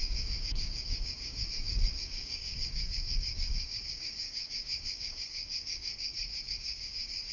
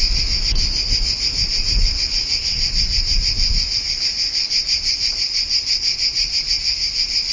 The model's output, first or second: first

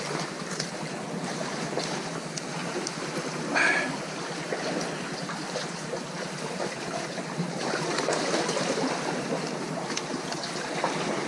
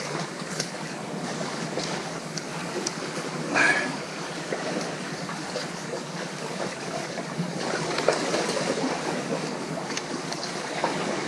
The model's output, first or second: second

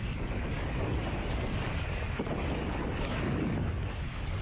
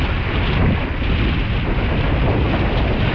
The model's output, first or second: first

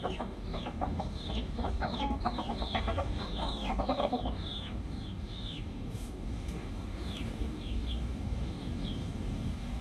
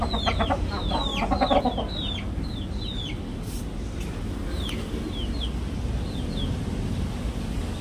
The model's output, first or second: first